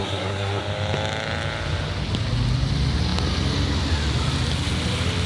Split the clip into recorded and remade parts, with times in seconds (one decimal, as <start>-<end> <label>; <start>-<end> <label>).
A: 0.0-0.6 remade; 0.6-5.3 recorded